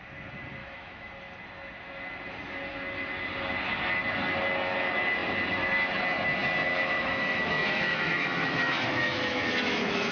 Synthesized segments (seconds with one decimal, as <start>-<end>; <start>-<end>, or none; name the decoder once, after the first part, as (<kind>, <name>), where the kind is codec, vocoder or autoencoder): 0.6-1.1 (autoencoder, DAC-VAE); 6.7-10.1